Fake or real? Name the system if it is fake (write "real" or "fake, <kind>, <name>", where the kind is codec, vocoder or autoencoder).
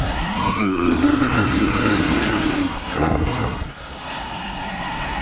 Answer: fake, codec, SNAC